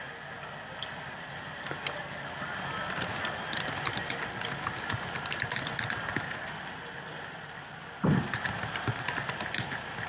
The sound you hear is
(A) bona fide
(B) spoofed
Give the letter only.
A